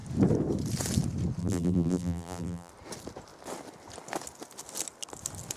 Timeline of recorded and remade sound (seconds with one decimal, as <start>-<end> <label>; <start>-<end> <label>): 0.0-1.4 recorded; 1.4-2.7 remade; 2.7-5.6 recorded